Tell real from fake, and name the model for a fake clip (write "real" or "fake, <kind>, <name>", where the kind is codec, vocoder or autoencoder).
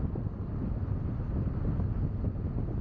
real